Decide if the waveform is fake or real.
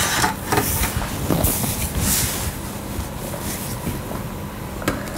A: real